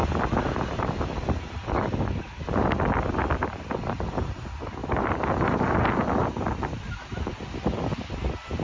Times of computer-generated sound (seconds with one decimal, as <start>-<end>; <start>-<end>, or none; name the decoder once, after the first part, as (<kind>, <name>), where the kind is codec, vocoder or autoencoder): 4.8-5.6 (vocoder, BigVGAN v2); 6.2-6.8